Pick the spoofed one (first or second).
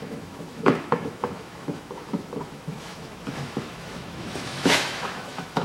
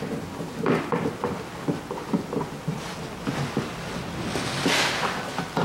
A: first